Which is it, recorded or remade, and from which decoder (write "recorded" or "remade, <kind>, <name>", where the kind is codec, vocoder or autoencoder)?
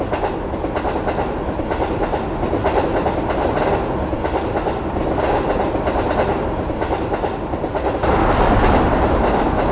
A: recorded